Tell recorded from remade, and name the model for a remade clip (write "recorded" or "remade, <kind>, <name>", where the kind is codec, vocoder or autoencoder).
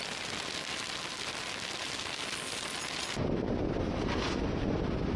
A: recorded